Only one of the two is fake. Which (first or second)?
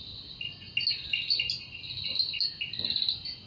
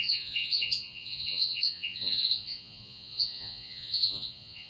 second